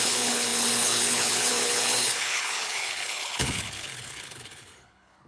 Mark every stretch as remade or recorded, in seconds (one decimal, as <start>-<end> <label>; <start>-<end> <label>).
0.0-5.3 remade